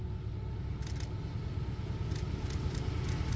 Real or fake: real